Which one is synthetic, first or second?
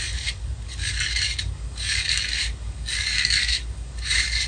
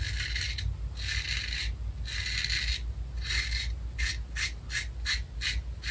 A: first